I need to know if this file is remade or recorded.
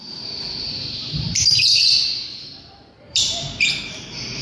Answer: remade